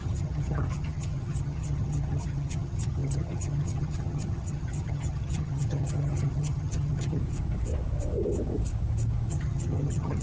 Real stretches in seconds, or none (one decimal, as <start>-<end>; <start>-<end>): 7.2-9.3